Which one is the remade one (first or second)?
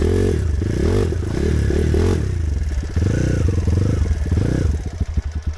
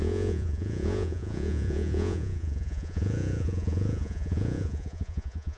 second